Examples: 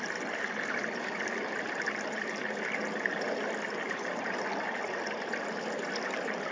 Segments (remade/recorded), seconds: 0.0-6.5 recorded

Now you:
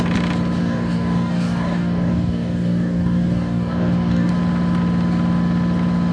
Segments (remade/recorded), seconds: 0.0-0.6 recorded; 0.6-4.3 remade; 4.3-6.1 recorded

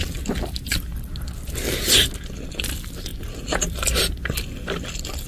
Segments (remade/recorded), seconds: 0.0-0.9 remade; 0.9-2.5 recorded; 2.5-5.3 remade

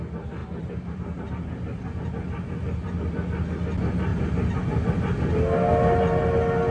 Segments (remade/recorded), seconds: 0.0-0.4 recorded; 0.4-1.3 remade; 1.3-6.7 recorded

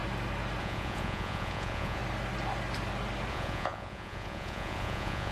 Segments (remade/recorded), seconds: 0.0-0.6 recorded; 0.6-2.0 remade; 2.0-3.3 recorded; 3.3-5.3 remade

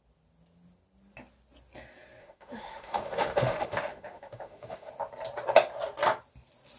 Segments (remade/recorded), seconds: 0.0-2.2 recorded; 2.2-4.9 remade; 4.9-6.8 recorded

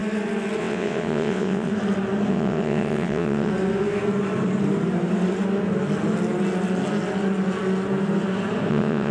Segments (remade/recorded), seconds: 0.0-0.6 recorded; 0.6-1.7 remade; 1.7-2.3 recorded; 2.3-3.5 remade; 3.5-8.7 recorded; 8.7-9.1 remade

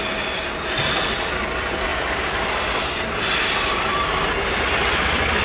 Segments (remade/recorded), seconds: 0.0-1.9 recorded; 1.9-4.1 remade; 4.1-5.4 recorded